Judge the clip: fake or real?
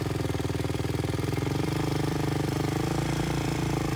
fake